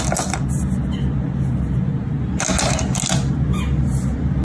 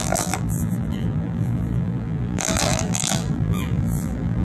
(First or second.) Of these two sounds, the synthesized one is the second